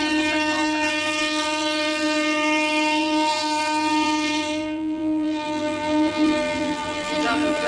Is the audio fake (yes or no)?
yes